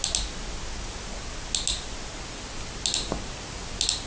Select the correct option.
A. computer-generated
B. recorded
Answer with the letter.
B